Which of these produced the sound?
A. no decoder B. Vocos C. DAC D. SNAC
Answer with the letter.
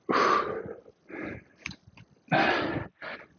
A